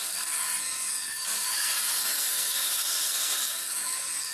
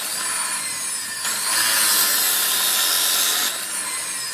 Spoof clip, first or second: first